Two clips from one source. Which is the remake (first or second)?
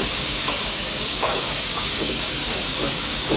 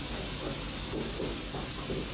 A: first